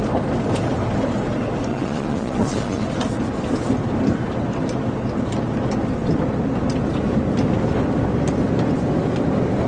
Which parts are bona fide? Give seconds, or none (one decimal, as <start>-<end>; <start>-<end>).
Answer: 0.0-1.7; 2.8-9.7